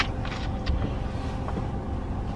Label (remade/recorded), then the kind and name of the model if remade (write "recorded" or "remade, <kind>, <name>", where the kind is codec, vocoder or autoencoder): recorded